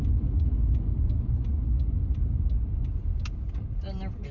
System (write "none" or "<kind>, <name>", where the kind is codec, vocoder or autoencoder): none